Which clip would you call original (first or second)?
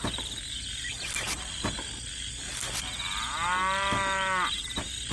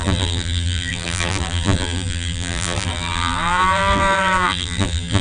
first